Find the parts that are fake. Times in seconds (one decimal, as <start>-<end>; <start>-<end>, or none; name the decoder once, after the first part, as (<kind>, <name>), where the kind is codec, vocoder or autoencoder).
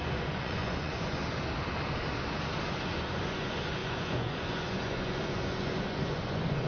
0.0-1.2 (vocoder, Vocos); 2.8-6.7